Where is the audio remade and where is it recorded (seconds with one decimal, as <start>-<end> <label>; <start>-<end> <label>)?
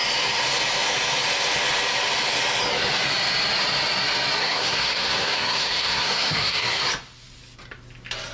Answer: 0.0-4.4 recorded; 4.4-6.8 remade; 6.8-8.3 recorded